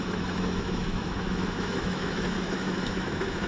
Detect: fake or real fake